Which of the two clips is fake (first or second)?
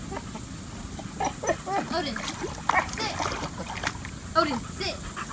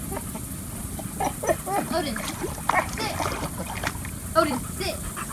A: second